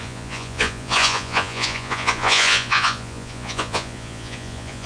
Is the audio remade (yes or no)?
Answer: yes